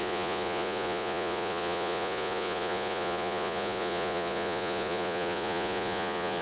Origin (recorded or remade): remade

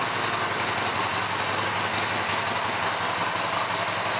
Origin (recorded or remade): recorded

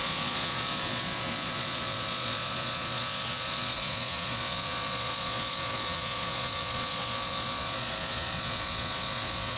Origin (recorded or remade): remade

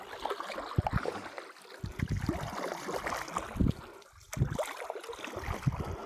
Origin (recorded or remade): recorded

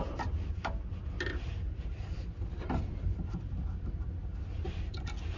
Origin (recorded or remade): recorded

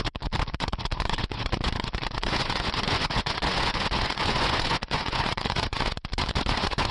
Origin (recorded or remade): remade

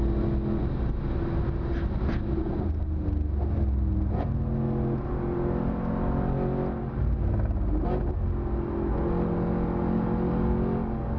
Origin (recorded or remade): recorded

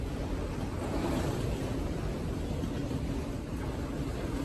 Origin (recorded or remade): recorded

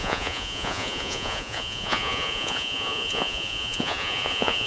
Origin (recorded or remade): remade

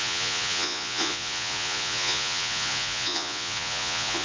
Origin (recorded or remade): remade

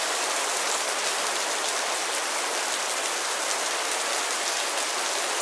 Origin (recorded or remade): recorded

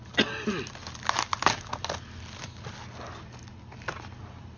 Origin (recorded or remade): recorded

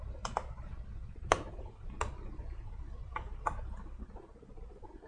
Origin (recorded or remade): recorded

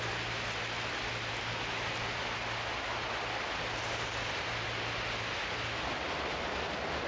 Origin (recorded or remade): recorded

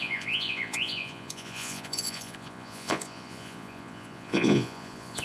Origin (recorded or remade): remade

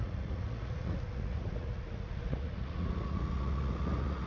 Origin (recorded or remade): remade